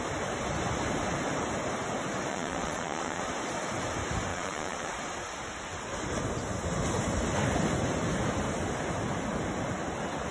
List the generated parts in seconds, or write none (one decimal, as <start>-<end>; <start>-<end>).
2.3-3.2; 4.3-4.9